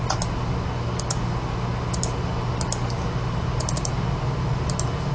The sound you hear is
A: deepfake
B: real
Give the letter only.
B